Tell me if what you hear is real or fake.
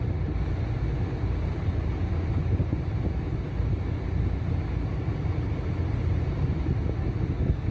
real